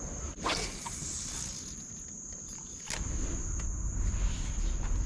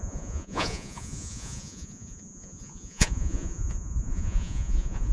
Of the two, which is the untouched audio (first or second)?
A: first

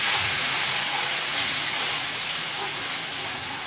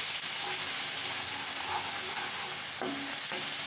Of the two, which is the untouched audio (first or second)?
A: second